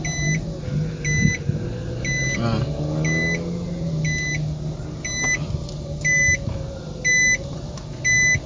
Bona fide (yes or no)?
yes